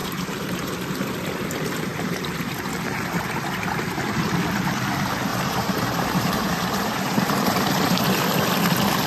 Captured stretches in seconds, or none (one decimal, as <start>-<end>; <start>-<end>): 0.7-5.3; 8.0-9.1